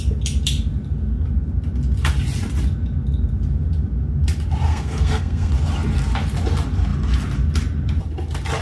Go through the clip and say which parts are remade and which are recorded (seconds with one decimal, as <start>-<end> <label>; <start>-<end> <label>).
0.0-4.7 recorded; 4.7-5.5 remade; 5.5-8.6 recorded